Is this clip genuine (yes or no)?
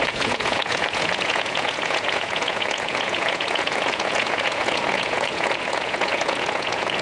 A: no